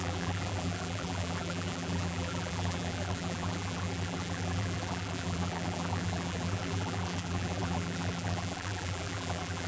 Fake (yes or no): yes